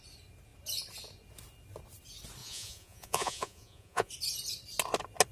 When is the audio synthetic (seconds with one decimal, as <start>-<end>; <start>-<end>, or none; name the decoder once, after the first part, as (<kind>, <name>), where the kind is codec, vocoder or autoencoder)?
2.4-4.1 (vocoder, Vocos)